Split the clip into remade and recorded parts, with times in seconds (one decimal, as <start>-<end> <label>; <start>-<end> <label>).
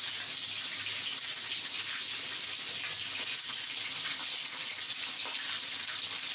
0.0-6.3 recorded